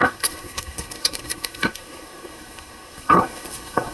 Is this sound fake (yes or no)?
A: yes